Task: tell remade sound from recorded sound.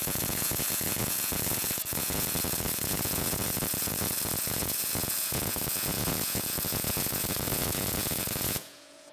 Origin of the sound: remade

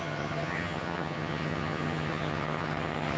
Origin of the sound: remade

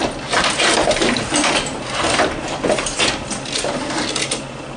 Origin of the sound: recorded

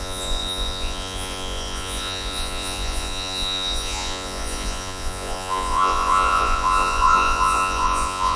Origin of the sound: remade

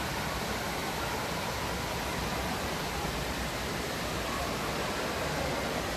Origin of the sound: remade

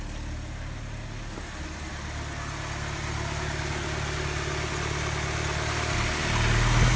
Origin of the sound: recorded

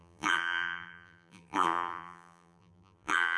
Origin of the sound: remade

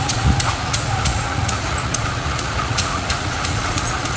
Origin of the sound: remade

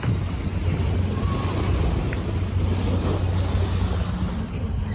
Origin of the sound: recorded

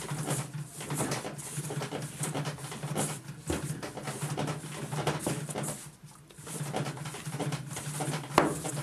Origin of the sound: recorded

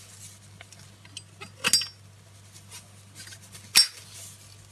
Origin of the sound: recorded